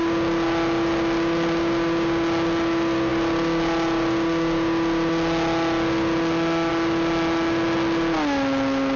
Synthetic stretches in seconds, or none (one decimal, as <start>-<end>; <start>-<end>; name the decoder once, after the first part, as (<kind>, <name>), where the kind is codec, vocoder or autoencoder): none

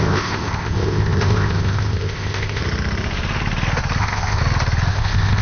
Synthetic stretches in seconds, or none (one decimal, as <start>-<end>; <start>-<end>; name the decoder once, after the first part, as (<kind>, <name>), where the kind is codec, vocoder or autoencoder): 0.0-2.6 (codec, ZipCodec); 4.0-4.4; 4.9-5.4

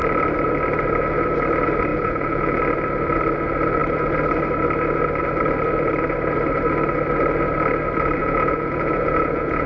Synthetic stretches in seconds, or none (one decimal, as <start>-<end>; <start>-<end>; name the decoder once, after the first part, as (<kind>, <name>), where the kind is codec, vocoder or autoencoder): 1.9-2.6 (vocoder, Vocos); 8.2-9.7

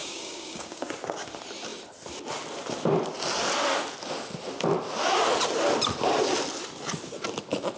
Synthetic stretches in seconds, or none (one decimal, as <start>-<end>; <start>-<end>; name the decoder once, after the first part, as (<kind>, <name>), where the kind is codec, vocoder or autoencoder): 0.0-0.9 (codec, DAC)

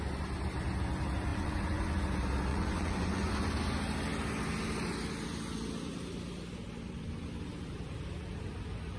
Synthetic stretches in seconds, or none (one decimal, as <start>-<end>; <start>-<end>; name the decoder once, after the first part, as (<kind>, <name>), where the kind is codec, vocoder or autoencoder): 1.3-2.0 (vocoder, Vocos); 2.5-3.6

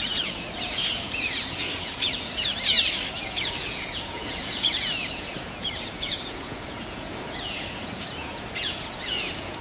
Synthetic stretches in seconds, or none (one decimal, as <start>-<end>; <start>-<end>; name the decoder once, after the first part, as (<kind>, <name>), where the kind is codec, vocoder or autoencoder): 0.0-2.5 (vocoder, Vocos); 3.1-9.6

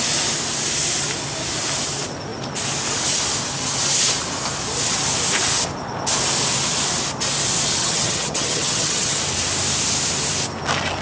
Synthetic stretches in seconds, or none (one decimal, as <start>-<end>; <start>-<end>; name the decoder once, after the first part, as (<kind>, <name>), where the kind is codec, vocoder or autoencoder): 7.8-9.2 (vocoder, HiFi-GAN)

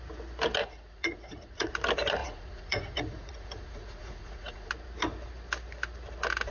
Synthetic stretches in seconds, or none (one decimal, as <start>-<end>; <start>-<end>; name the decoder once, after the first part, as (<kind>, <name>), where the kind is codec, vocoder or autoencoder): 0.6-1.7 (vocoder, Vocos); 2.2-4.7